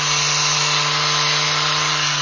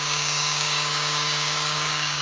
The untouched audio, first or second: first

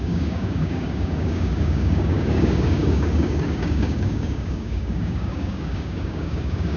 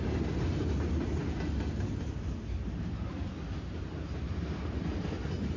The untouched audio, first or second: second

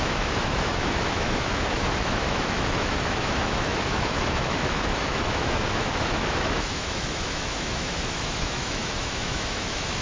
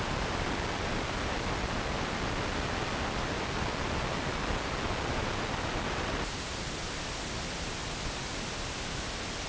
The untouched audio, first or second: second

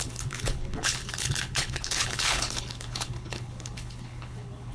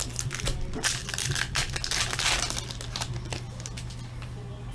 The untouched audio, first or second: second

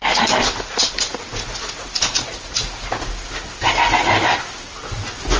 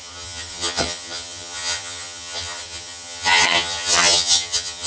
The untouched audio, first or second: first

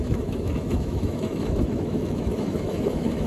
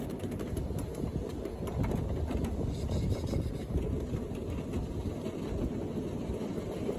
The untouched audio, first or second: second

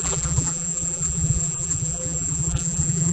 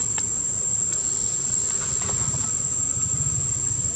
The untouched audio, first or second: second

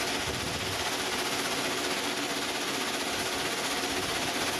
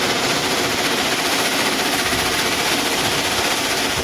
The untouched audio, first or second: first